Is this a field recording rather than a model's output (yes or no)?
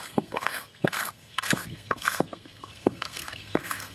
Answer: no